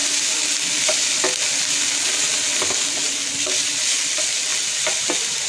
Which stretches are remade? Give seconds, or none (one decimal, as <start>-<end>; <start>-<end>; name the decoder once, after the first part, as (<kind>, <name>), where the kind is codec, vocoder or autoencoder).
3.3-4.5 (vocoder, BigVGAN v2); 5.1-5.5